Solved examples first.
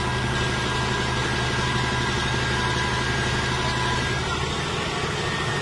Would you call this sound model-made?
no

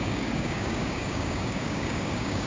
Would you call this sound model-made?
yes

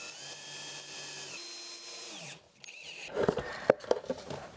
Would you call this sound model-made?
no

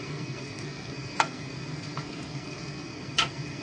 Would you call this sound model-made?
yes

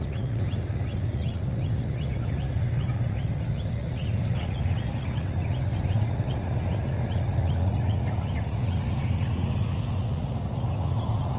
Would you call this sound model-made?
yes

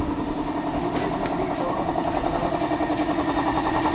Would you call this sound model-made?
no